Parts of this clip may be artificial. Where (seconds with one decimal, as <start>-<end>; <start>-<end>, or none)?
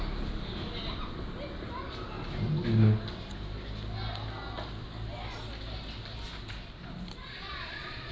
7.2-8.1